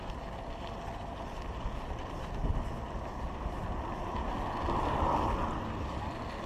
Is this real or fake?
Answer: real